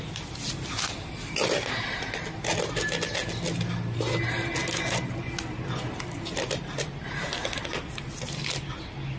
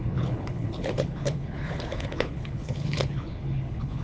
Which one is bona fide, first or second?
first